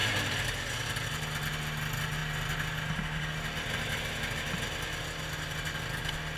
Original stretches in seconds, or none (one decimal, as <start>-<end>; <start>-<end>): 0.0-6.4